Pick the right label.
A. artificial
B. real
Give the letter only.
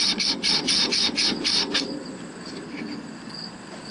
B